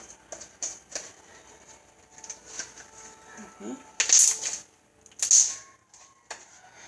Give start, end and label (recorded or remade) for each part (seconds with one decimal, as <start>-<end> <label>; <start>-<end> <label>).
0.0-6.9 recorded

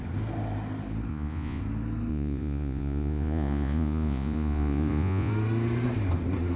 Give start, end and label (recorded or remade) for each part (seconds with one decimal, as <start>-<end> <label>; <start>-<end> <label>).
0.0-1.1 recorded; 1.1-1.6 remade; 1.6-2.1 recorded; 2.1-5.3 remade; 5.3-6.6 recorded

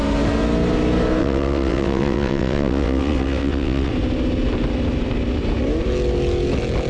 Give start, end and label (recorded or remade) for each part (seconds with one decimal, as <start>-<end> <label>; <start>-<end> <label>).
0.0-1.2 recorded; 1.2-3.9 remade; 3.9-6.9 recorded

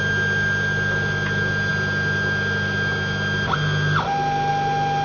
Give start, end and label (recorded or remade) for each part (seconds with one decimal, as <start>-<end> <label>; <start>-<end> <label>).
0.0-5.0 recorded

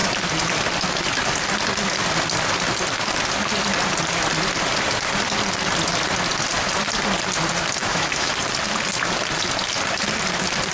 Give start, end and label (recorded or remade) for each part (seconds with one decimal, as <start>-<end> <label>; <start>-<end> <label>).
0.0-7.8 recorded; 7.8-8.3 remade; 8.3-10.7 recorded